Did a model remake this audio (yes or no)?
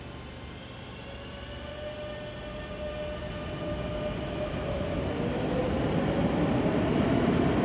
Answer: no